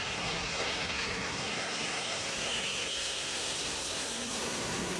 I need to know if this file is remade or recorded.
remade